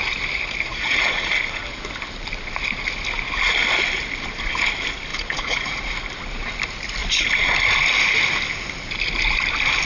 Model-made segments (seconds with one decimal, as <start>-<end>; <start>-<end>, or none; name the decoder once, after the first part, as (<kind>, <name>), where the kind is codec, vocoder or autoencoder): 0.7-1.3 (vocoder, Vocos); 5.1-5.8